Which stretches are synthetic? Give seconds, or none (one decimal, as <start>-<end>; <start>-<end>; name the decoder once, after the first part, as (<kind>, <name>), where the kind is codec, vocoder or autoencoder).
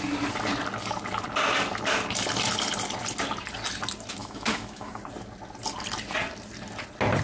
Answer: 4.2-5.0 (autoencoder, DAC-VAE)